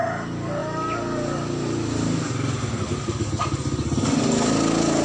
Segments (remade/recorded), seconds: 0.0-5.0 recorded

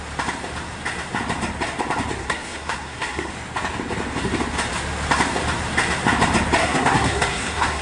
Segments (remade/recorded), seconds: 0.0-2.2 recorded; 2.2-3.3 remade; 3.3-6.6 recorded; 6.6-7.8 remade

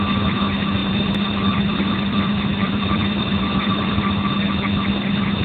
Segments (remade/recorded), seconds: 0.0-0.8 recorded; 0.8-4.0 remade; 4.0-5.4 recorded